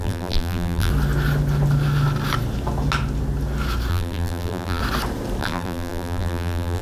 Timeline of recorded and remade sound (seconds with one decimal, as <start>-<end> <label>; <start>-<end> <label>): 0.0-0.9 remade; 0.9-3.9 recorded; 3.9-4.8 remade; 4.8-5.4 recorded; 5.4-6.8 remade